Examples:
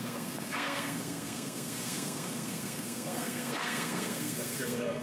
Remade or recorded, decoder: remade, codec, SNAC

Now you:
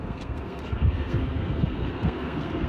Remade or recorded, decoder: remade, codec, SNAC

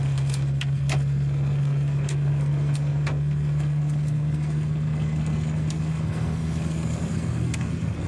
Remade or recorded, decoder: remade, codec, SNAC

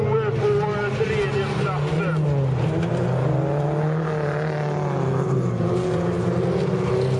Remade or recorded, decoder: recorded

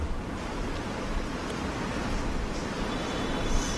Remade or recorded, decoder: recorded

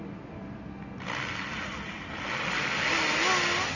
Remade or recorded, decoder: recorded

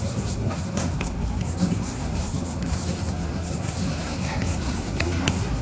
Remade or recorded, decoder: remade, codec, SNAC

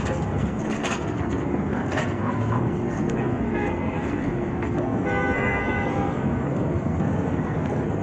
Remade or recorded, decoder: remade, codec, SNAC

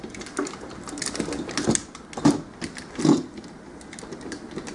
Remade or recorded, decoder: recorded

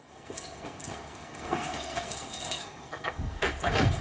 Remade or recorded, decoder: remade, codec, SNAC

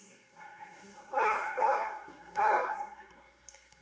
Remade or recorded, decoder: remade, codec, SNAC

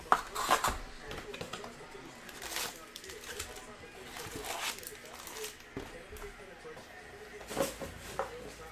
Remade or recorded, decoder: recorded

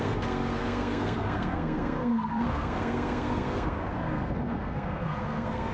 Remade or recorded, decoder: remade, codec, SNAC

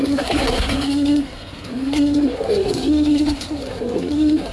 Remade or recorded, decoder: remade, codec, SNAC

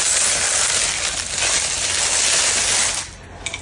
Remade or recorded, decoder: recorded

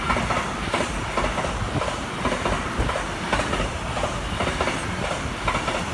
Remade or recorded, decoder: recorded